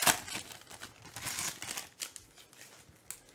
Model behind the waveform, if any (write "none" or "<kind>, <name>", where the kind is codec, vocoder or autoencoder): none